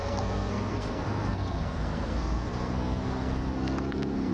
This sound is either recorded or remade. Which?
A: remade